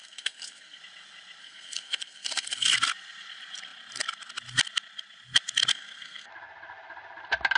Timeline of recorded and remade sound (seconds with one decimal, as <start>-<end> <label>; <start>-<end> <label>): 0.0-0.8 remade; 0.8-1.4 recorded; 1.4-2.7 remade; 2.7-5.7 recorded; 5.7-6.3 remade; 6.3-7.6 recorded